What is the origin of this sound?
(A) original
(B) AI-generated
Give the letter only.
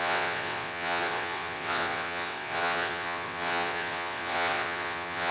B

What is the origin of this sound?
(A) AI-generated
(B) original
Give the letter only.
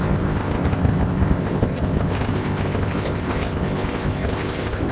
A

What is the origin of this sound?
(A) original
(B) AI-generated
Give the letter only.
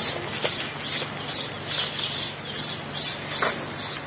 A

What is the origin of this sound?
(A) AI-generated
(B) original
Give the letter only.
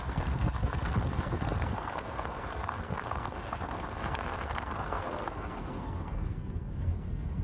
A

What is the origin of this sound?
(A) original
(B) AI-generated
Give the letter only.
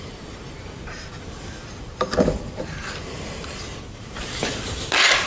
B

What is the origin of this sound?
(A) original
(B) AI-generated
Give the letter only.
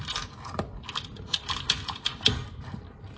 A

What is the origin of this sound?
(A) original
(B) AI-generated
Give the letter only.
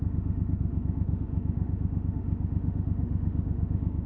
B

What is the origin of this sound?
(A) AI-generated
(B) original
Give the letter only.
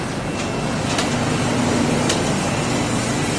B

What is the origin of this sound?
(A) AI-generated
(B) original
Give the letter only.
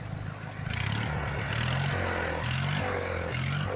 B